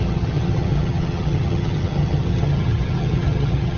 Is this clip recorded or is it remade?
remade